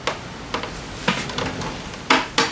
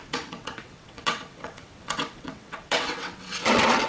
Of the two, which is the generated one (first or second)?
second